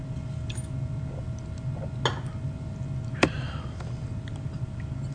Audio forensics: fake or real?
real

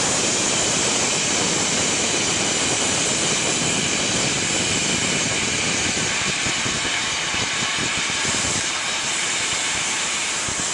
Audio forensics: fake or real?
fake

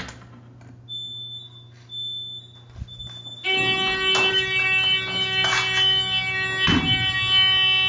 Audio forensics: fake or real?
real